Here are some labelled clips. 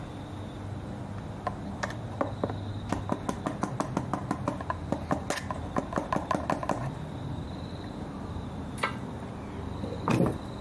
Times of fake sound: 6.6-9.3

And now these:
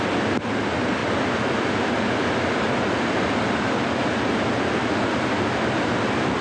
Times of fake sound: 1.0-4.2

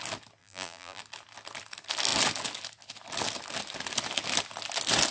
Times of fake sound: 0.4-1.0

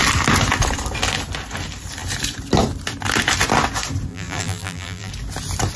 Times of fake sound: 4.1-5.1

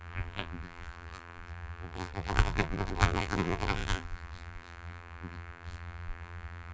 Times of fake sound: 0.0-6.7

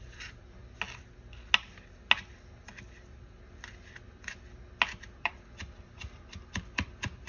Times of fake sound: 0.0-0.6; 5.0-7.3

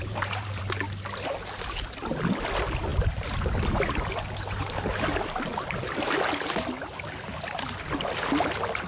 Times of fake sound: 0.0-0.6